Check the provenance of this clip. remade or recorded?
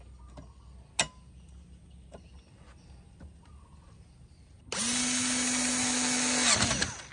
recorded